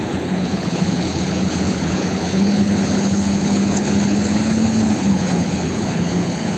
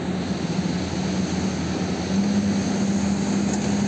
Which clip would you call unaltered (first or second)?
second